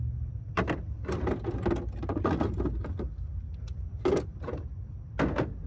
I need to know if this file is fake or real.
real